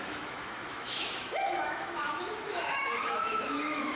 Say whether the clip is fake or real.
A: fake